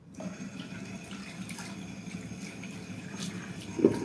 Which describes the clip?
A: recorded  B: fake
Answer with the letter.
A